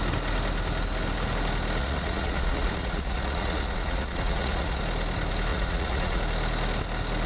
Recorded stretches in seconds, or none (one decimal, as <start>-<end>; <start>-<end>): 0.0-1.8; 4.8-5.5; 6.2-7.3